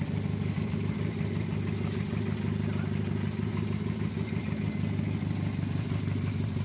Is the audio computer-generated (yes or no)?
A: no